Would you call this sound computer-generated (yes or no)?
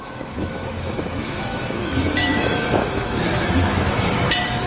yes